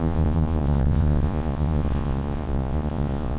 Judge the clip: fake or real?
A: fake